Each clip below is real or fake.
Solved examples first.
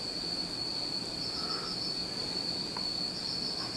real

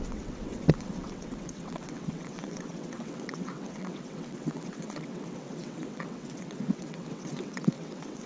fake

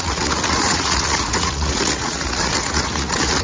fake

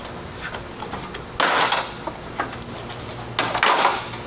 real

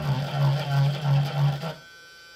real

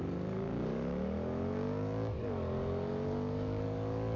fake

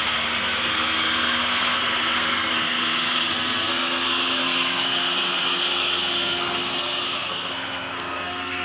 fake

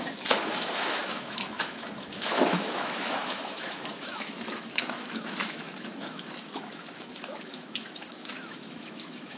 fake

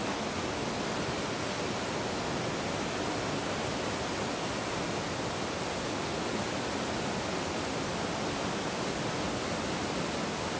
real